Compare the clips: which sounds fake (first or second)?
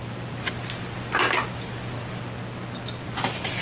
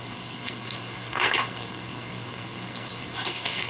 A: second